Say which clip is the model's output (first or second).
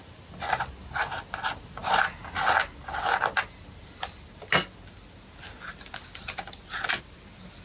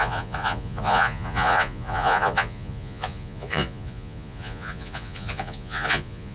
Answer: second